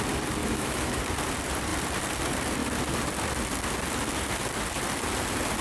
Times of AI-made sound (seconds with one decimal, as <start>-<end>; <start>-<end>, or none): 0.4-1.0